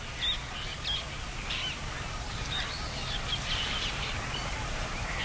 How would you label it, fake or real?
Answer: real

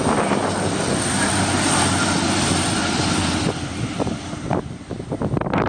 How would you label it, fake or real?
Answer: real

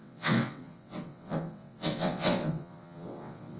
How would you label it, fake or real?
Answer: fake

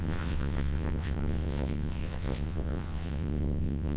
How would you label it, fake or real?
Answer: fake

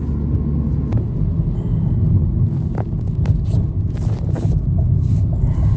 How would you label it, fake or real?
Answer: real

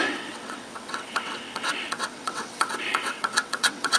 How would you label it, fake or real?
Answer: fake